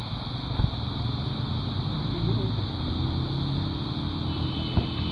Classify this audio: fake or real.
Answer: real